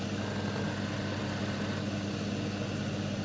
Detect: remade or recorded recorded